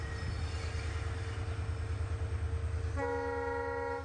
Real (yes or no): yes